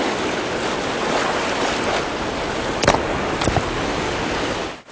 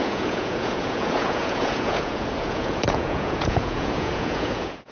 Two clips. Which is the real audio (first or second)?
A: first